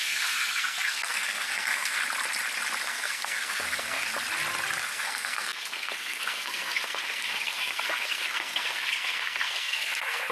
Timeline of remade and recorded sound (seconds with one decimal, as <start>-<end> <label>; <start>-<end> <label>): 0.0-2.0 remade; 2.0-2.9 recorded; 2.9-4.1 remade; 4.1-4.8 recorded; 4.8-10.3 remade